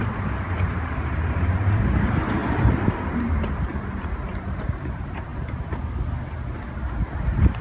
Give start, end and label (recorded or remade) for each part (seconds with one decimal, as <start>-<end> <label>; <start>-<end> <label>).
0.0-3.7 remade; 3.7-4.3 recorded; 4.3-7.6 remade